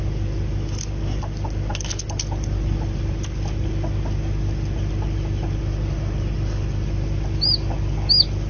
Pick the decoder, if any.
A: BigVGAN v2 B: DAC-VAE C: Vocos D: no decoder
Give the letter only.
D